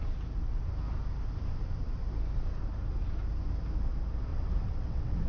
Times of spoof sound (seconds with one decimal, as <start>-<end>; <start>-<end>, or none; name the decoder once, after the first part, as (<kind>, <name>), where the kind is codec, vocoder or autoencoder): 4.3-5.3 (vocoder, WaveNeXt)